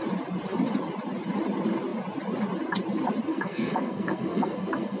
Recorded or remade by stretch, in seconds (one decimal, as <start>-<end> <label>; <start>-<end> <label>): 0.0-3.3 recorded; 3.3-5.0 remade